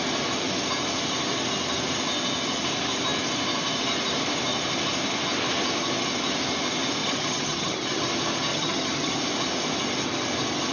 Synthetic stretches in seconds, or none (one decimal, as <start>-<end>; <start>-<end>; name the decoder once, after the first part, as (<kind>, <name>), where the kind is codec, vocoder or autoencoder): 7.0-8.0 (vocoder, HiFi-GAN); 8.5-9.2